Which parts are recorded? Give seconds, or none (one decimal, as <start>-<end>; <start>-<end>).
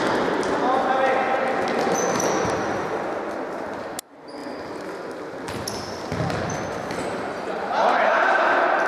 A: 0.0-8.9